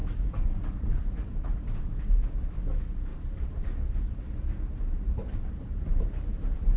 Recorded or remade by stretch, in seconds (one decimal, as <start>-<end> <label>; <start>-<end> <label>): 0.0-2.0 remade; 2.0-3.1 recorded; 3.1-6.8 remade